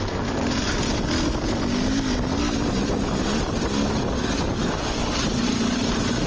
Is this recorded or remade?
recorded